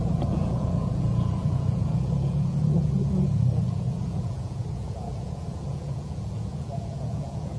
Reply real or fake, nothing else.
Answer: fake